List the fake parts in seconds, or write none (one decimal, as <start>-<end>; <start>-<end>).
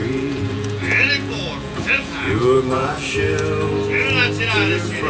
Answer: 0.0-3.1